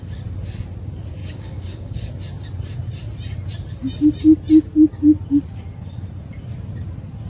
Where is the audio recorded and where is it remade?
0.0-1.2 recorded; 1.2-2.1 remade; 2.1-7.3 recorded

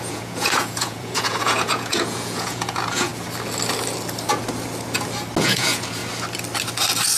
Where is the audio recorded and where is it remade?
0.0-3.1 remade; 3.1-5.4 recorded; 5.4-6.0 remade; 6.0-7.2 recorded

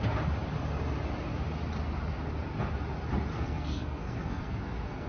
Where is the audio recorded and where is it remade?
0.0-3.3 recorded; 3.3-5.1 remade